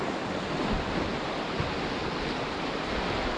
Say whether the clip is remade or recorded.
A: recorded